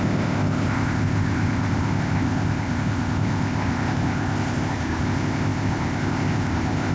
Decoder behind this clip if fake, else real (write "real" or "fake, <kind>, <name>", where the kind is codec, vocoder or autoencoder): fake, codec, ZipCodec